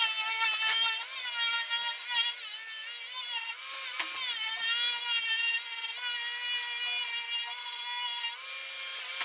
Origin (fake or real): real